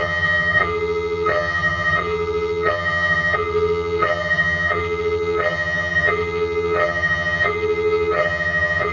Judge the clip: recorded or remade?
remade